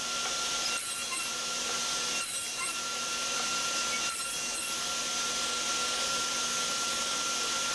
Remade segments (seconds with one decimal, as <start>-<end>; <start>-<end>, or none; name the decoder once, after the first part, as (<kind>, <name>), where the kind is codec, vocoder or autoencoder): none